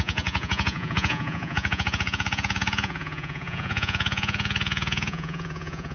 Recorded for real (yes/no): no